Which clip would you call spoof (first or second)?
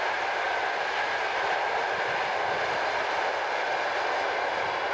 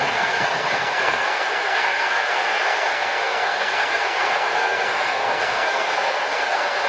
second